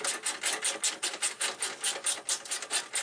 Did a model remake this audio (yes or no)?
no